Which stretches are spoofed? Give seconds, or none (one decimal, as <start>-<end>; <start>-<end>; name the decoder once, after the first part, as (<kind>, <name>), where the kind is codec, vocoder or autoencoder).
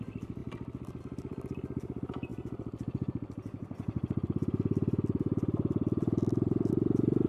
0.0-0.4 (vocoder, BigVGAN v2); 1.0-7.3